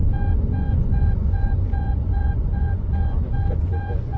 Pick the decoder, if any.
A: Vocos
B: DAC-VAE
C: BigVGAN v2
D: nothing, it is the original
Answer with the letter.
A